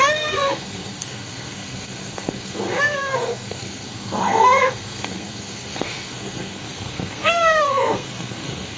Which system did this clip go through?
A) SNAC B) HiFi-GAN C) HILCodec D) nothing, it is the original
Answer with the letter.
A